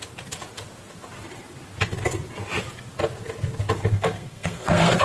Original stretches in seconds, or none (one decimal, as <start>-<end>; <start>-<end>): 0.0-3.9